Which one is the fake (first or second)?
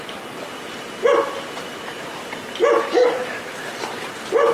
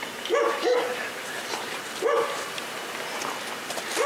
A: first